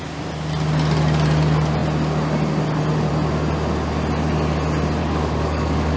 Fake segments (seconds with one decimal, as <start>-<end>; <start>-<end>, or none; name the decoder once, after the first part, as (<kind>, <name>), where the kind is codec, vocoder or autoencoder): 5.0-6.0 (codec, DAC)